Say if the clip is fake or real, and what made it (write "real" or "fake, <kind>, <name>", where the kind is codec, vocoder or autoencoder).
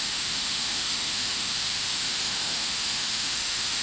fake, autoencoder, DAC-VAE